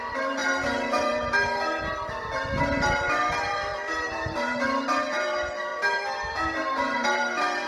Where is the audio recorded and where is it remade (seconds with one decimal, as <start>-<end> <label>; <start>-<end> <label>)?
0.0-7.7 remade